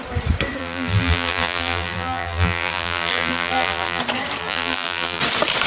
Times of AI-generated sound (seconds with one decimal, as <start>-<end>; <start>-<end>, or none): 0.6-4.0; 4.4-5.2